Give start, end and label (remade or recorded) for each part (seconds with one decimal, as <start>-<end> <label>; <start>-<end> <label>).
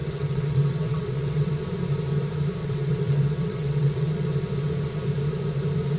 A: 0.0-1.5 remade; 1.5-2.6 recorded; 2.6-4.1 remade; 4.1-6.0 recorded